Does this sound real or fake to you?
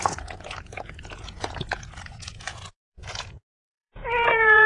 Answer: fake